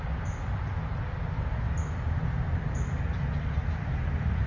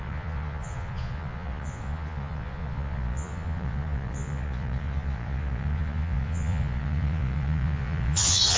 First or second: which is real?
first